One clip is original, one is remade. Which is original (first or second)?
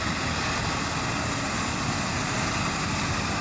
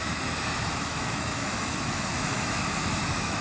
first